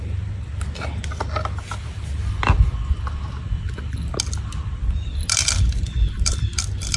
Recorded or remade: recorded